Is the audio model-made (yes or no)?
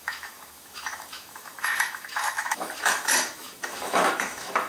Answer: yes